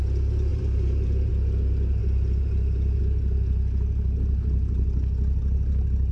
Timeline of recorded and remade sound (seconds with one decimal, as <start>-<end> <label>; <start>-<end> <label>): 0.0-0.5 recorded; 0.5-1.3 remade; 1.3-2.0 recorded; 2.0-3.0 remade; 3.0-6.1 recorded